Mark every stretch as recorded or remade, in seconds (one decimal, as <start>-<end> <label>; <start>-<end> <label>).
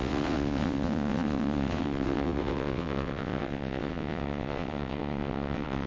0.0-5.9 remade